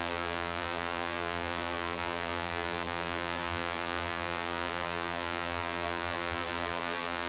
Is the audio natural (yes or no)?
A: no